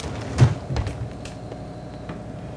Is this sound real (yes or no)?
yes